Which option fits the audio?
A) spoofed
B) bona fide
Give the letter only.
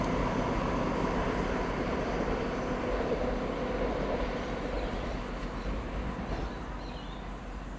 B